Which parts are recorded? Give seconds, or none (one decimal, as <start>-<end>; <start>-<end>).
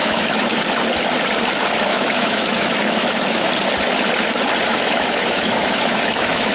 0.6-1.9; 3.5-4.7